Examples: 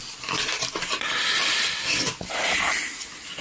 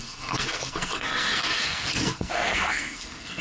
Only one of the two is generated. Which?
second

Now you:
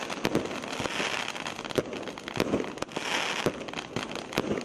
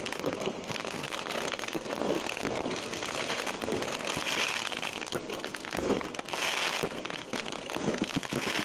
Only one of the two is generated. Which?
second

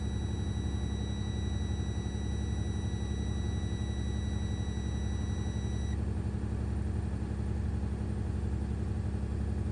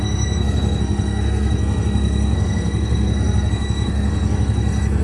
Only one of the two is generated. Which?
second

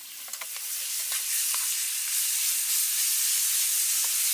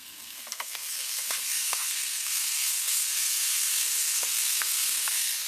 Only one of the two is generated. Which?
second